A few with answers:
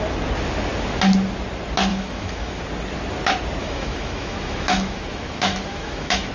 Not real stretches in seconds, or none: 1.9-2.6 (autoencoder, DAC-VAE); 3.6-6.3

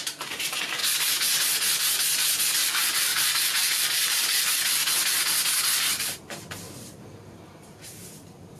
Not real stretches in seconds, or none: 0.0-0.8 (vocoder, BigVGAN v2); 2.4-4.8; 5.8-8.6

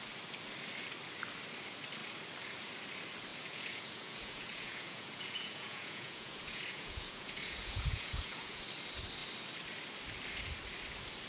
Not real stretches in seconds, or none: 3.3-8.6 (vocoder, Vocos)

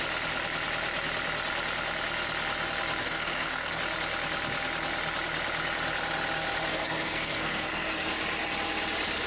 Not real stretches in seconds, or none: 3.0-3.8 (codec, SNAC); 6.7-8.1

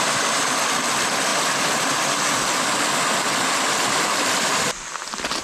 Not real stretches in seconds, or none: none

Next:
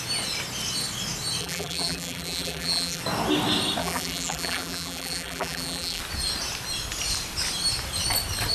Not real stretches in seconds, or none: 1.4-3.0 (vocoder, BigVGAN v2); 3.8-6.0